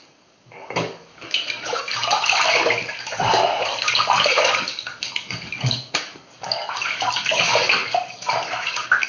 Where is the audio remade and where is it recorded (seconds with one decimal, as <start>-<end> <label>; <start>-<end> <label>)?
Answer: 0.0-9.1 remade